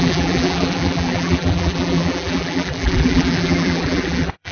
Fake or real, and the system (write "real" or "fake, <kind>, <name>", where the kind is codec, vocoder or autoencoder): fake, vocoder, BigVGAN v2